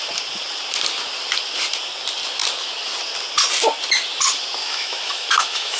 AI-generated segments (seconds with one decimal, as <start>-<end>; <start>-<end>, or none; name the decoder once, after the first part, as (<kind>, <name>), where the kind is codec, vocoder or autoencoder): 4.6-5.8 (autoencoder, DAC-VAE)